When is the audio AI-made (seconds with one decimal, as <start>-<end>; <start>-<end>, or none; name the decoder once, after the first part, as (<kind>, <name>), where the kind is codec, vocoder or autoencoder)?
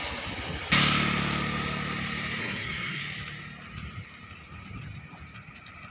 2.4-3.0 (codec, SNAC)